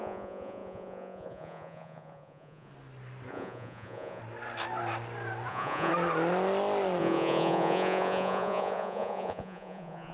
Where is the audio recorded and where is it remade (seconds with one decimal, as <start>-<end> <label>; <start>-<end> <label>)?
0.0-2.7 remade; 2.7-3.3 recorded; 3.3-4.2 remade; 4.2-5.5 recorded; 5.5-5.9 remade; 5.9-7.0 recorded; 7.0-10.1 remade

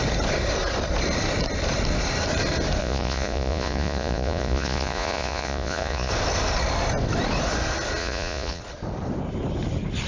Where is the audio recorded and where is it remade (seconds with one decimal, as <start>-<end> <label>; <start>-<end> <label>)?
0.0-2.8 recorded; 2.8-6.1 remade; 6.1-8.0 recorded; 8.0-8.6 remade; 8.6-10.1 recorded

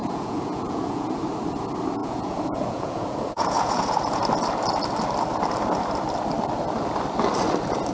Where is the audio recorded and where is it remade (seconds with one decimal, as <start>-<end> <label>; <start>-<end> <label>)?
0.0-1.2 remade; 1.2-2.0 recorded; 2.0-4.2 remade; 4.2-7.9 recorded

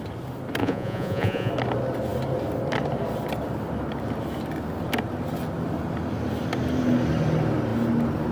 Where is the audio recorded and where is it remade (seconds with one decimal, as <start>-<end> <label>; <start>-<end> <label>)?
0.0-0.6 recorded; 0.6-1.5 remade; 1.5-8.3 recorded

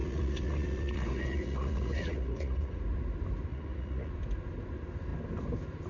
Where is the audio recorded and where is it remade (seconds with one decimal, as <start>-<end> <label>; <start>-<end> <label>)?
0.0-2.8 remade; 2.8-3.5 recorded; 3.5-4.1 remade; 4.1-5.9 recorded

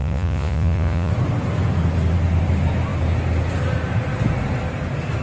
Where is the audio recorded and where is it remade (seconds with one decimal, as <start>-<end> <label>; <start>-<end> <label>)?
0.0-1.1 remade; 1.1-5.2 recorded